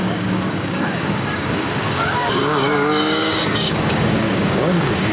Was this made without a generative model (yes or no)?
no